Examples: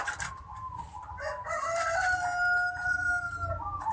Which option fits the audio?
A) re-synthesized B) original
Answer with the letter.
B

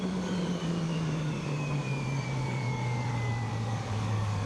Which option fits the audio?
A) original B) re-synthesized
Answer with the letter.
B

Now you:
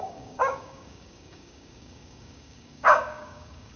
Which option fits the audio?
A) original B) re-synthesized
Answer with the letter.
B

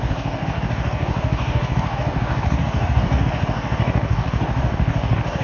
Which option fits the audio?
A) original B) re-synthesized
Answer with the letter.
B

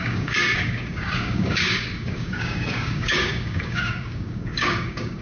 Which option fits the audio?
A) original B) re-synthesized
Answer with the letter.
B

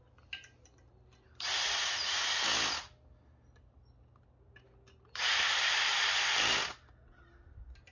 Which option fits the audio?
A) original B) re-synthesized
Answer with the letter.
A